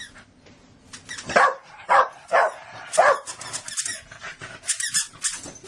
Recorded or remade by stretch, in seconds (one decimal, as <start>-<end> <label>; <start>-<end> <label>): 0.0-4.3 recorded; 4.3-4.8 remade; 4.8-5.7 recorded